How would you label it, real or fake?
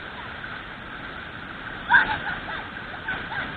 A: real